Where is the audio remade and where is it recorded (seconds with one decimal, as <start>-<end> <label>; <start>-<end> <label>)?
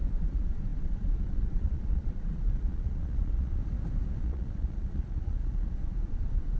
0.0-3.6 remade; 3.6-4.2 recorded; 4.2-6.6 remade